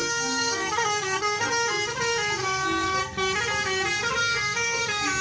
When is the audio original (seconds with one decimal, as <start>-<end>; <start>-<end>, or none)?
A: 1.5-2.4; 3.0-4.2; 4.8-5.2